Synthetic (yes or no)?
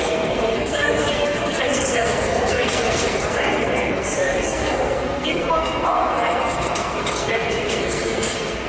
yes